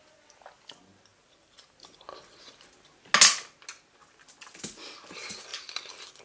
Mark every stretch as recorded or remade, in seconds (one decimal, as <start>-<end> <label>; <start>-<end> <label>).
0.0-6.2 recorded